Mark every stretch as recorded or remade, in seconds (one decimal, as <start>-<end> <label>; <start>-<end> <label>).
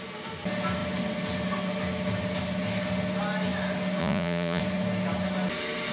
0.0-4.0 recorded; 4.0-4.6 remade; 4.6-5.9 recorded